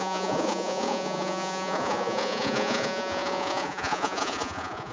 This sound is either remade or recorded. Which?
remade